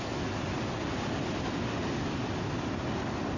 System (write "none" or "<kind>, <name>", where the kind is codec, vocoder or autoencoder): none